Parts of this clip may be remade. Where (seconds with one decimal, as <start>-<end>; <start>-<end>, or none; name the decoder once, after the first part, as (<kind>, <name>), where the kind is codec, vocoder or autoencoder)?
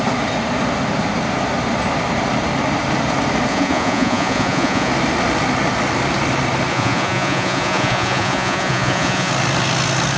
3.5-4.9 (vocoder, Vocos); 6.7-9.3